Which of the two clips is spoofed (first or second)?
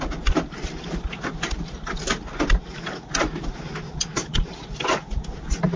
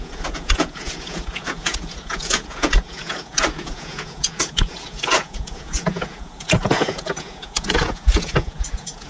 second